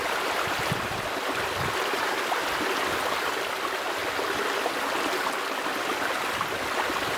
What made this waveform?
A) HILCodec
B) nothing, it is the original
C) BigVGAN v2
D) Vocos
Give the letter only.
B